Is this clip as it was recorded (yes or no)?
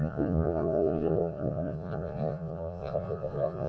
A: no